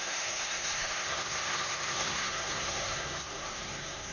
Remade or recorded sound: remade